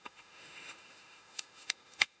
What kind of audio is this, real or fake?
fake